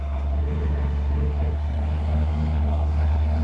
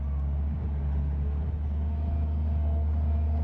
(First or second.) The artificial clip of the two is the first